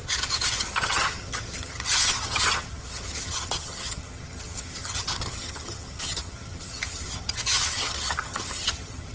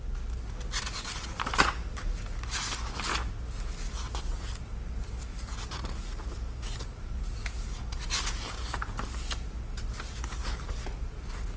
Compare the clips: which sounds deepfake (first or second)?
first